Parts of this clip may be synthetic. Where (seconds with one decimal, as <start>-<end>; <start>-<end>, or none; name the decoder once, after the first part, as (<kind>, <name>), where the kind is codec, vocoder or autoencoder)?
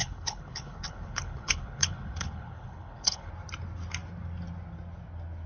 0.0-3.3 (codec, HILCodec)